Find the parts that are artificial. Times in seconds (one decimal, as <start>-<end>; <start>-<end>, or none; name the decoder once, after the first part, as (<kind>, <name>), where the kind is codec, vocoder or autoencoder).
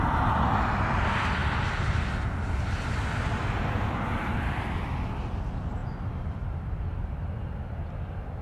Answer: 5.8-6.4 (vocoder, BigVGAN v2)